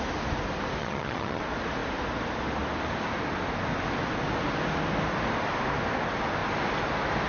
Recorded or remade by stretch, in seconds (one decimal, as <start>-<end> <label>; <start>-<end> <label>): 0.0-0.8 recorded; 0.8-1.4 remade; 1.4-7.3 recorded